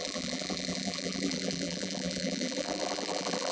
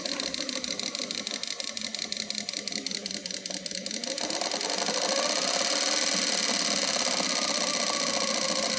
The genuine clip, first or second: second